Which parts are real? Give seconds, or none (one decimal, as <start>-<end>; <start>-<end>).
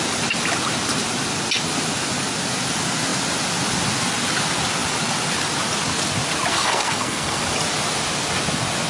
0.0-6.5; 7.4-8.9